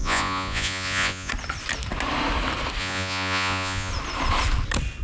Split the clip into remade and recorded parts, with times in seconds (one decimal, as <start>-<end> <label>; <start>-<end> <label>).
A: 0.0-1.3 remade; 1.3-2.8 recorded; 2.8-3.9 remade; 3.9-5.0 recorded